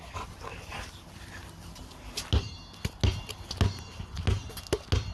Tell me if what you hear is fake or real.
real